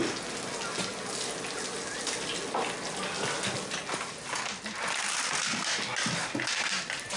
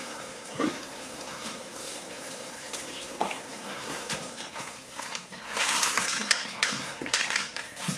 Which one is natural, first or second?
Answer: first